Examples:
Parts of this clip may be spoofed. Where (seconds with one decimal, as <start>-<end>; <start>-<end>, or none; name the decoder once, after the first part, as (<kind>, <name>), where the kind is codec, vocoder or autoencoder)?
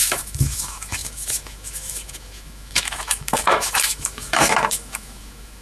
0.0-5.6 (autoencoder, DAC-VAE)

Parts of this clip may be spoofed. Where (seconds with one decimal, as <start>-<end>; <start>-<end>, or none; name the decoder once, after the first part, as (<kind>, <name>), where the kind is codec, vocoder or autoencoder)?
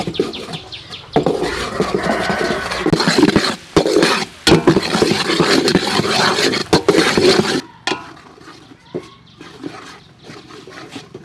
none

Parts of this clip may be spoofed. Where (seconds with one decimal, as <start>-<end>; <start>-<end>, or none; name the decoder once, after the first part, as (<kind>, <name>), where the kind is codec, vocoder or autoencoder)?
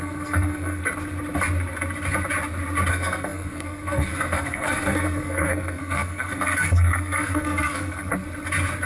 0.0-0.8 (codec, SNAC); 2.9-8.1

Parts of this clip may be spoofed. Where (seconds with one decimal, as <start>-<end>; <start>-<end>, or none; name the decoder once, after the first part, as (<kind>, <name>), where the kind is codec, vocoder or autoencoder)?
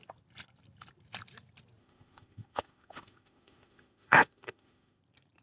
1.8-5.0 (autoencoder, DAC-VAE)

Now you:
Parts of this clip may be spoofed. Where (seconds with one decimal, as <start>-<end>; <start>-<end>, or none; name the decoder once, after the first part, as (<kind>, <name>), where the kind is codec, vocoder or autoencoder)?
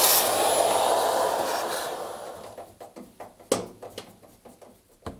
none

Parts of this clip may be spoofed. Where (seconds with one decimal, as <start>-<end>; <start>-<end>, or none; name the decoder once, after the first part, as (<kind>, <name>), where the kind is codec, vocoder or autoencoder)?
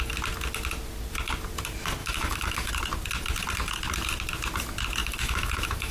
2.0-2.7 (autoencoder, DAC-VAE); 5.0-5.9